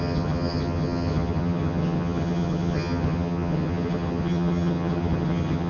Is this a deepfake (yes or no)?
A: yes